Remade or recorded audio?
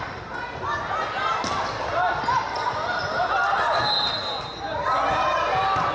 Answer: recorded